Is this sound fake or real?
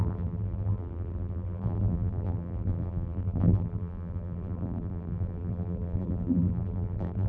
fake